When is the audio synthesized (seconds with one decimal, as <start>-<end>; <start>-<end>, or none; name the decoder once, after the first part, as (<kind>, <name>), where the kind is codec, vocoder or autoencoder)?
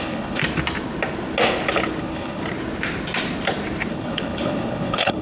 0.0-0.4 (codec, HILCodec); 2.0-2.4; 3.9-5.2